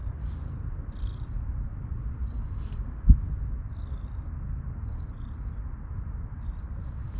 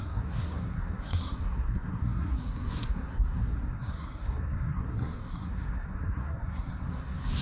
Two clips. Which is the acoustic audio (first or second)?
first